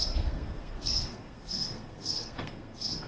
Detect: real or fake fake